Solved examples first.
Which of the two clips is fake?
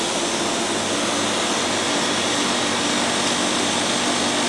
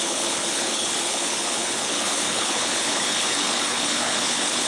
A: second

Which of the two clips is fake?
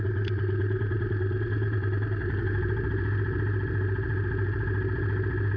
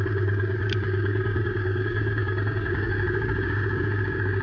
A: second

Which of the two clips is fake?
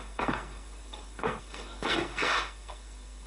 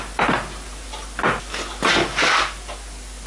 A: first